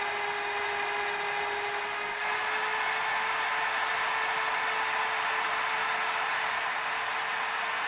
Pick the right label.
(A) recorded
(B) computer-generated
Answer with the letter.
A